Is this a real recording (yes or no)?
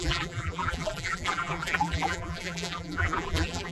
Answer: no